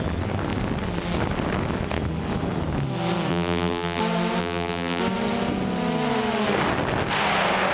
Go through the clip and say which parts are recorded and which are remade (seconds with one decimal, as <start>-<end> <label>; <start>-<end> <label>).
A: 0.0-3.3 recorded; 3.3-4.0 remade; 4.0-4.4 recorded; 4.4-5.0 remade; 5.0-7.7 recorded